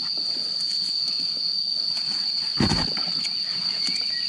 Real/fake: real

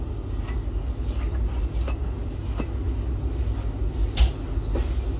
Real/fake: real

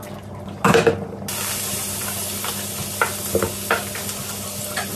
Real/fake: real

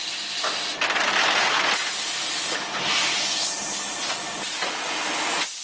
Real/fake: real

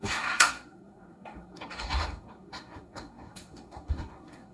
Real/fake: fake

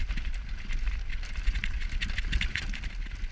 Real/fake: real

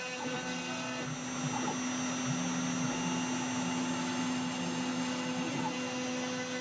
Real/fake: real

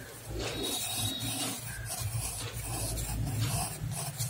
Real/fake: real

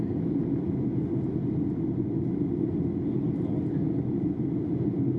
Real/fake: real